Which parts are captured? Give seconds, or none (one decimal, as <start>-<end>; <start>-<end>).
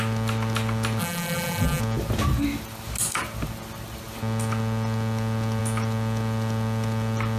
0.0-1.0; 1.8-7.4